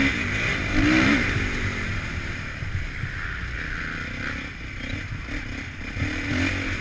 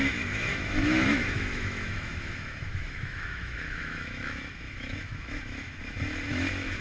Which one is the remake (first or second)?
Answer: second